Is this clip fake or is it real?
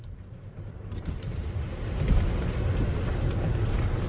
fake